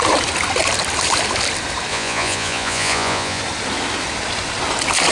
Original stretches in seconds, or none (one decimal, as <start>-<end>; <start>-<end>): 0.0-1.9; 3.4-5.1